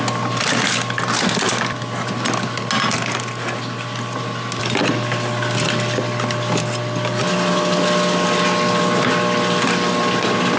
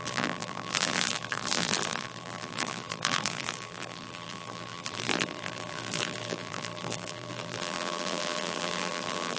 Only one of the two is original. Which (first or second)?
first